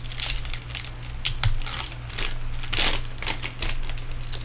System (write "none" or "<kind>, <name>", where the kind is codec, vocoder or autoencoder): none